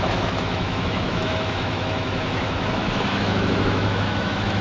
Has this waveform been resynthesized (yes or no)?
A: yes